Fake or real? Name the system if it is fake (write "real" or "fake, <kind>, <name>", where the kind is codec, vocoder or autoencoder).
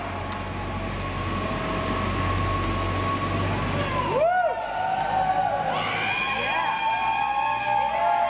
real